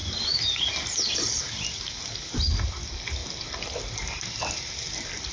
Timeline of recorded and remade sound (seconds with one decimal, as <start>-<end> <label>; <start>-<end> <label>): 0.0-2.7 recorded; 2.7-3.2 remade; 3.2-4.5 recorded; 4.5-5.3 remade